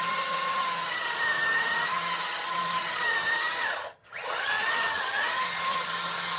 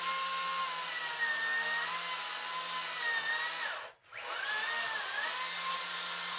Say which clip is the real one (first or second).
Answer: second